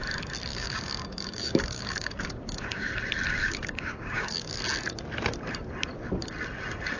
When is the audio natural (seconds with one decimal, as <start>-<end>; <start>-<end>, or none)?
0.0-0.5; 2.9-3.4; 4.5-7.0